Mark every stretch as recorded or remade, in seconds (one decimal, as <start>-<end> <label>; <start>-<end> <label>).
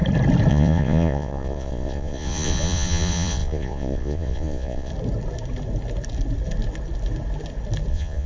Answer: 0.0-0.5 recorded; 0.5-4.9 remade; 4.9-7.9 recorded; 7.9-8.3 remade